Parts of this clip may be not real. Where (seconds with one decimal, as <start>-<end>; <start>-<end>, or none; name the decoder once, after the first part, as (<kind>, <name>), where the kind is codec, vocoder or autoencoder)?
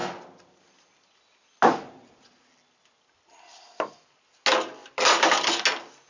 none